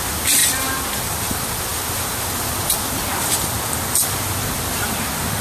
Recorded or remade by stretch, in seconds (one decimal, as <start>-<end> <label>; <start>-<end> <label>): 0.0-5.4 recorded